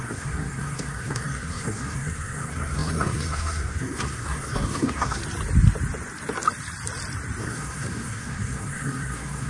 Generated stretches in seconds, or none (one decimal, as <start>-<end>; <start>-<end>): 0.0-5.2; 7.4-9.5